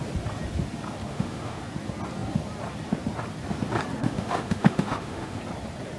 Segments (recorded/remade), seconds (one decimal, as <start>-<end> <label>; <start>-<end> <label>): 0.0-1.1 recorded; 1.1-1.6 remade; 1.6-4.0 recorded; 4.0-5.4 remade; 5.4-6.0 recorded